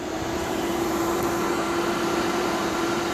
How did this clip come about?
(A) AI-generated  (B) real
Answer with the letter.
A